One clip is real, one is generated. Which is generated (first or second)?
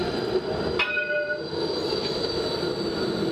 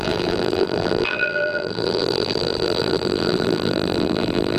second